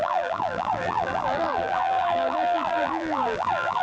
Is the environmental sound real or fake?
fake